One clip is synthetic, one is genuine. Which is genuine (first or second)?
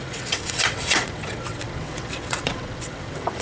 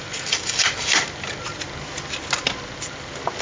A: second